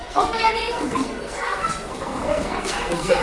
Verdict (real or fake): fake